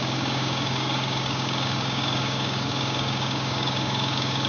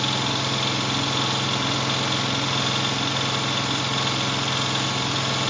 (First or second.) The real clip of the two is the second